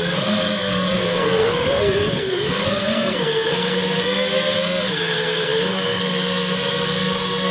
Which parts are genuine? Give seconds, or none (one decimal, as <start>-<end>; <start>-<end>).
none